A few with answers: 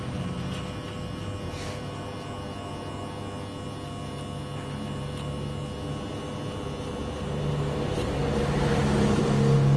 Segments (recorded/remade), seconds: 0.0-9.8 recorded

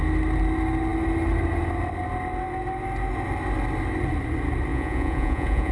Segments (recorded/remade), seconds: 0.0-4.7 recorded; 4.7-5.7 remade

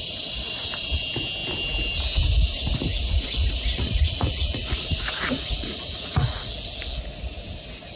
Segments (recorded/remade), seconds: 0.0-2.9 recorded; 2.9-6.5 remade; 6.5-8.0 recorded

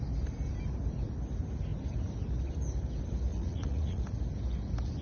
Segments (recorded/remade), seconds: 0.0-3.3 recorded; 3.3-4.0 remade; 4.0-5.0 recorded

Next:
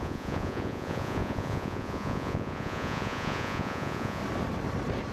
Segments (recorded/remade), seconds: 0.0-4.2 remade; 4.2-5.1 recorded

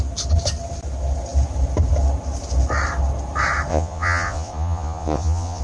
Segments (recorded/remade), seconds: 0.0-3.7 recorded; 3.7-5.6 remade

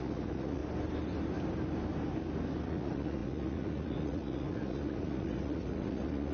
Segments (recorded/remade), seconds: 0.0-0.6 remade; 0.6-2.6 recorded; 2.6-6.3 remade